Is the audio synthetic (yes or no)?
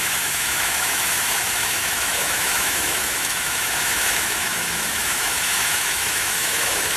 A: yes